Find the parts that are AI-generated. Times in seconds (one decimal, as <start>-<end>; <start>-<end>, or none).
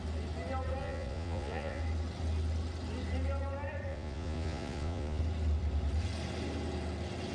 0.8-1.8; 3.9-5.2